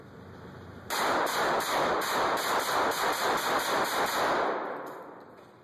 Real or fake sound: real